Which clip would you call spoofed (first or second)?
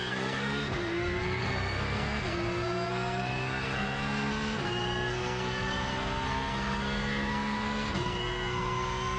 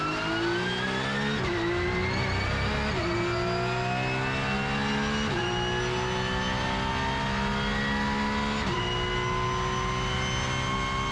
first